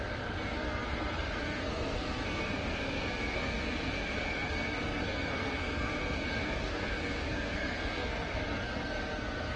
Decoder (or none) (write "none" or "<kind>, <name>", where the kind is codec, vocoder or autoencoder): codec, SNAC